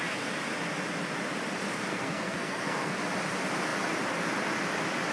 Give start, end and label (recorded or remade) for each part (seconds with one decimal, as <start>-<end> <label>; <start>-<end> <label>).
0.0-1.9 recorded; 1.9-2.9 remade; 2.9-5.1 recorded